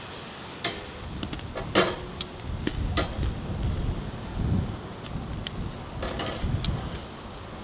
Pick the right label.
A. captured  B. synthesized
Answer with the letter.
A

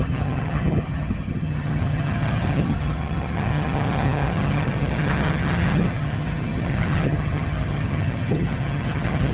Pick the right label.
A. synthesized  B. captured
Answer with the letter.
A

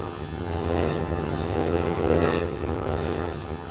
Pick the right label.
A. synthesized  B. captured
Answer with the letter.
A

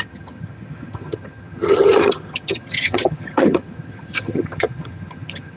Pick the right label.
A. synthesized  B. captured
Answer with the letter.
A